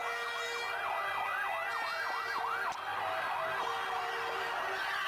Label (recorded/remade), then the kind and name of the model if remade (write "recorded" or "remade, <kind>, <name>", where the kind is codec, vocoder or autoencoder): recorded